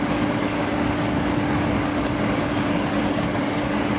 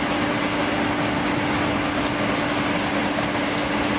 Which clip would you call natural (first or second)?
second